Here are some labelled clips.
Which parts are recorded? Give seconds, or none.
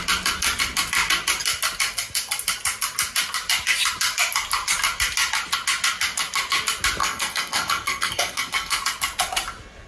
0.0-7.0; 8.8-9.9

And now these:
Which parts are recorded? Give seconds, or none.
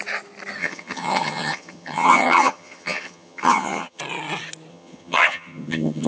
0.0-0.6; 4.0-4.7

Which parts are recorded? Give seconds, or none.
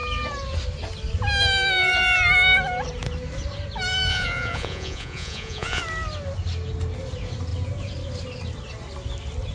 0.0-4.1; 5.8-9.5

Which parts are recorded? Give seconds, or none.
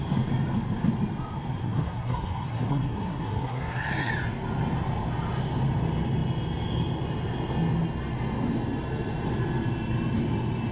0.0-1.6; 4.1-10.7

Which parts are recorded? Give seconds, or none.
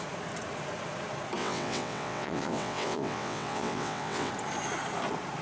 0.0-1.4; 4.3-5.4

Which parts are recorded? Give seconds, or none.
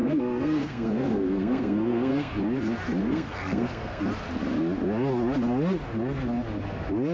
2.4-3.0; 4.0-7.1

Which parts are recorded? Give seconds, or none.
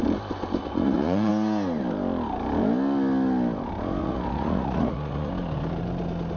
0.0-0.6; 1.3-4.0; 5.3-6.4